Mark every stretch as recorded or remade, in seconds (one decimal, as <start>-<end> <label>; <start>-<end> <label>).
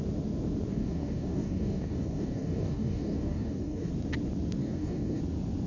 0.0-0.7 recorded; 0.7-3.9 remade; 3.9-4.6 recorded; 4.6-5.2 remade; 5.2-5.7 recorded